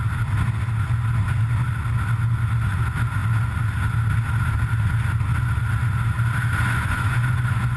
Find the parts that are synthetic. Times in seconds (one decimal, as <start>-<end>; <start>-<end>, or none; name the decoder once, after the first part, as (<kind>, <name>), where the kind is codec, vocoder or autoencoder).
6.6-7.8 (vocoder, Vocos)